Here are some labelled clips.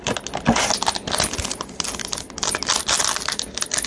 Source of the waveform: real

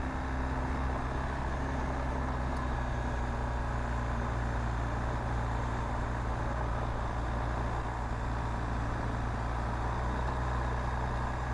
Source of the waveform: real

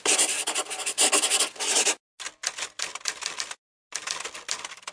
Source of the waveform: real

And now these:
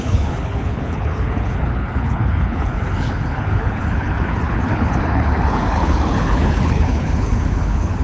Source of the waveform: fake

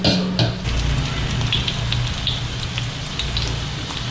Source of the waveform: real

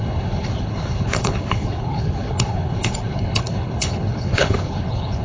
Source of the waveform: fake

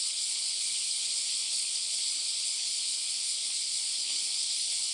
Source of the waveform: fake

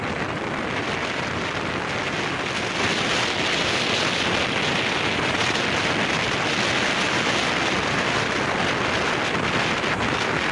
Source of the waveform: real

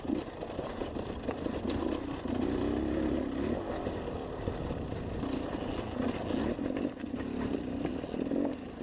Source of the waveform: real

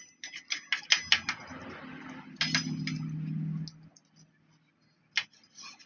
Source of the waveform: real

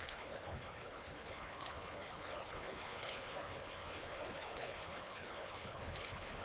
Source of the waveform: fake